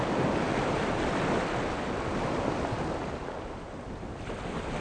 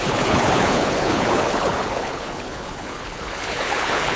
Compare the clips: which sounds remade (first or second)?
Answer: second